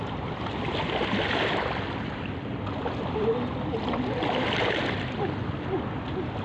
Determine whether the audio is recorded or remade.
remade